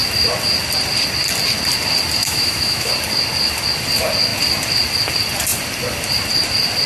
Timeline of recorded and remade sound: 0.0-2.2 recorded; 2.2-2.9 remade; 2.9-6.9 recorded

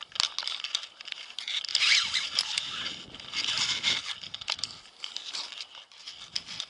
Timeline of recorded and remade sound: 0.0-6.7 recorded

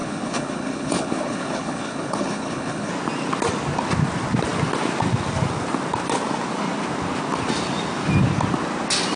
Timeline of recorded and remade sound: 0.0-2.9 remade; 2.9-9.2 recorded